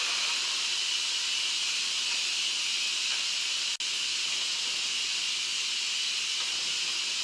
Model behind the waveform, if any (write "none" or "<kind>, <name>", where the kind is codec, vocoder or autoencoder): none